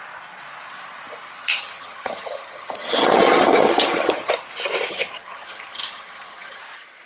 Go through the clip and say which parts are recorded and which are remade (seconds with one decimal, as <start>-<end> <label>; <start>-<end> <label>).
0.0-1.6 recorded; 1.6-4.3 remade; 4.3-4.9 recorded; 4.9-6.6 remade; 6.6-7.1 recorded